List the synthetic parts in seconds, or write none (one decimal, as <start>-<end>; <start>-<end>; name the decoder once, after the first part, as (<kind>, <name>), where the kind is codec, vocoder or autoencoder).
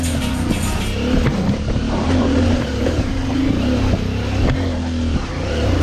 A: 1.8-3.3 (vocoder, BigVGAN v2)